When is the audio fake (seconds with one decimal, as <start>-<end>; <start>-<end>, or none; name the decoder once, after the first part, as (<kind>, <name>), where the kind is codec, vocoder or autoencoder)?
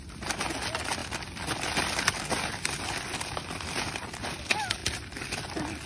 none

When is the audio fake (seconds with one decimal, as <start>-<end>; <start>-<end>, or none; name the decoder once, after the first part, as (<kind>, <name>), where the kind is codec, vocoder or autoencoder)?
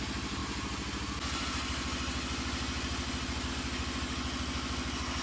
none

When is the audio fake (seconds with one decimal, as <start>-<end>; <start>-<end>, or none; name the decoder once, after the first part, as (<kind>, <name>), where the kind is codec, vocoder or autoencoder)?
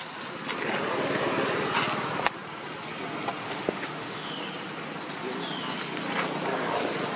3.4-4.3 (autoencoder, DAC-VAE)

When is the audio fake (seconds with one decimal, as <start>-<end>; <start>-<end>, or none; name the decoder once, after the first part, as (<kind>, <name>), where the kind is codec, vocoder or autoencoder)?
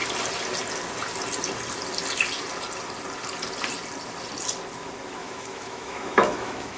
5.2-6.8 (autoencoder, DAC-VAE)